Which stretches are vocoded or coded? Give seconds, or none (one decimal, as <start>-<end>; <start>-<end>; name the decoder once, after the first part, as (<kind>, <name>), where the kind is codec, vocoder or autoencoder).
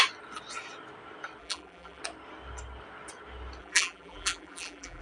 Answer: 1.4-2.0 (vocoder, BigVGAN v2); 3.6-5.0